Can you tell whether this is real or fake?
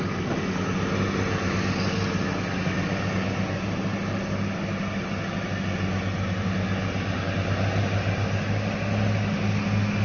real